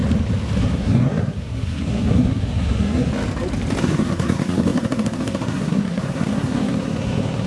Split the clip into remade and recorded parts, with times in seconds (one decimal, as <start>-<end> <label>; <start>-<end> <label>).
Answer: 0.0-0.6 recorded; 0.6-3.1 remade; 3.1-3.8 recorded; 3.8-7.5 remade